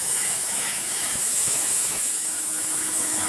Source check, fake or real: fake